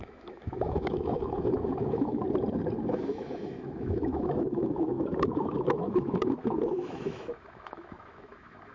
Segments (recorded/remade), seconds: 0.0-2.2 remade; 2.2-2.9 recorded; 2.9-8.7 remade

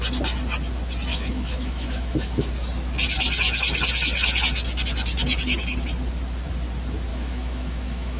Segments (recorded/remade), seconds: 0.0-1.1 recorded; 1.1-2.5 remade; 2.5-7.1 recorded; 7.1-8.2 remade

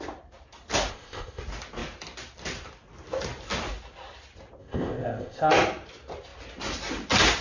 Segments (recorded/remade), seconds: 0.0-0.9 recorded; 0.9-1.4 remade; 1.4-4.6 recorded; 4.6-5.5 remade; 5.5-7.4 recorded

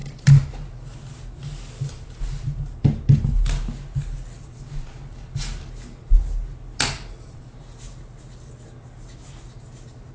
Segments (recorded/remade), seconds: 0.0-10.1 recorded

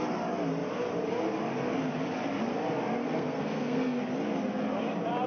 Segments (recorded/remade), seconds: 0.0-3.0 recorded; 3.0-4.0 remade; 4.0-5.3 recorded

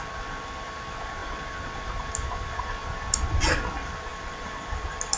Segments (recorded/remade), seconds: 0.0-5.2 recorded

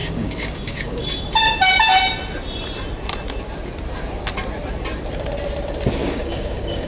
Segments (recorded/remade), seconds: 0.0-1.0 remade; 1.0-6.0 recorded; 6.0-6.9 remade